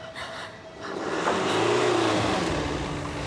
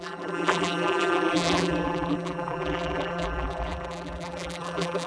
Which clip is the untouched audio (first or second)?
first